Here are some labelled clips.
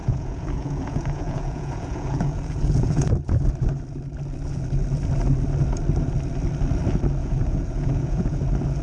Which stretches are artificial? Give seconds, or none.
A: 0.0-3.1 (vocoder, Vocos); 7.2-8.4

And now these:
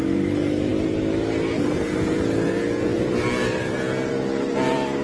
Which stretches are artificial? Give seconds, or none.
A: none

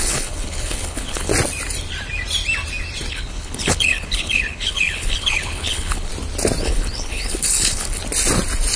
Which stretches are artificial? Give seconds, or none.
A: 0.0-1.3 (codec, HILCodec); 3.1-6.1; 6.6-8.0

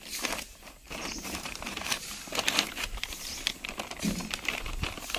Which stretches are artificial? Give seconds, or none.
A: 0.8-3.3 (vocoder, BigVGAN v2)